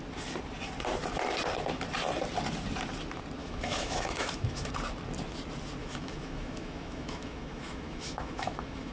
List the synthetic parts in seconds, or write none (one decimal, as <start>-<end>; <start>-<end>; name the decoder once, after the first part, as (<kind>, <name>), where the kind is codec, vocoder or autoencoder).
3.4-4.7 (autoencoder, DAC-VAE); 5.8-8.9